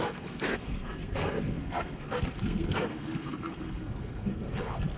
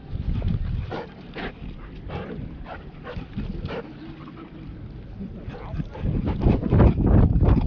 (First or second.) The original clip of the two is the second